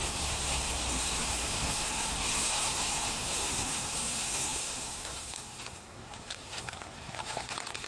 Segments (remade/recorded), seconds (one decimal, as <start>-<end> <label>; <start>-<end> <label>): 0.0-7.9 remade

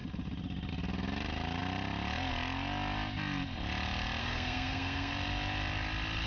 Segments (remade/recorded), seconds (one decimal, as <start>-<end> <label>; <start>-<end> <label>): 0.0-4.2 recorded; 4.2-5.1 remade; 5.1-6.3 recorded

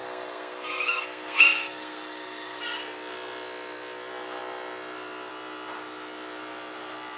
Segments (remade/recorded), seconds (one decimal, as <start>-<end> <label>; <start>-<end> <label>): 0.0-2.6 remade; 2.6-7.2 recorded

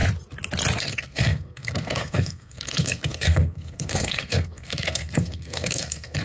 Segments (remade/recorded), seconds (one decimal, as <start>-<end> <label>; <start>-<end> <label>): 0.0-0.8 recorded; 0.8-6.2 remade

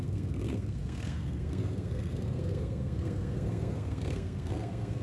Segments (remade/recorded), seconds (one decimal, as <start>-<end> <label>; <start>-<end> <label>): 0.0-5.0 remade